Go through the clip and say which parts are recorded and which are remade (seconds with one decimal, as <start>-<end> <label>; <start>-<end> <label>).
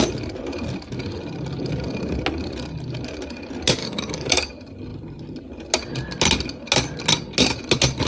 0.0-3.8 recorded; 3.8-4.5 remade; 4.5-8.1 recorded